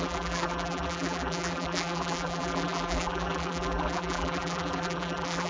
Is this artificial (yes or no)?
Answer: yes